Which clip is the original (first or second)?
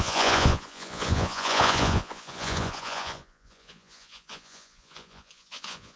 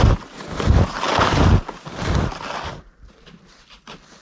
second